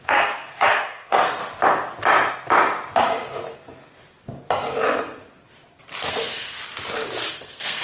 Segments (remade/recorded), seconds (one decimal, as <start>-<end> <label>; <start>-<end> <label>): 0.0-1.4 remade; 1.4-6.1 recorded; 6.1-6.6 remade; 6.6-7.3 recorded; 7.3-7.8 remade